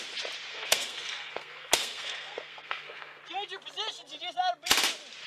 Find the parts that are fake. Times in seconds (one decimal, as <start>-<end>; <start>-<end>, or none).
0.5-3.2